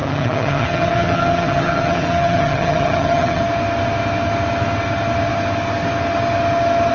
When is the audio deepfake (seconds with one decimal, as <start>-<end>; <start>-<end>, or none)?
0.0-3.4